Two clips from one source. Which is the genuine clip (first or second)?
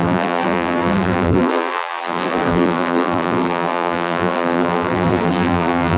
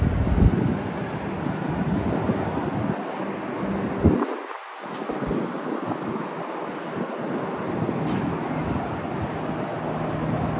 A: second